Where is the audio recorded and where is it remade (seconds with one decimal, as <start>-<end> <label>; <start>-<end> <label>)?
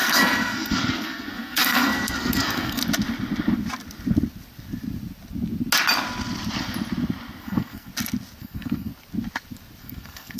0.0-2.8 remade; 2.8-7.4 recorded; 7.4-7.9 remade; 7.9-8.4 recorded; 8.4-8.9 remade; 8.9-9.8 recorded; 9.8-10.4 remade